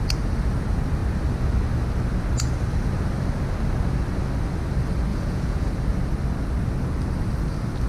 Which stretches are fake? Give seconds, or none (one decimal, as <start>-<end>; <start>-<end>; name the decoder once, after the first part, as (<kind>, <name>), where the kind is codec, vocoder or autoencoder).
5.1-5.7 (vocoder, Vocos)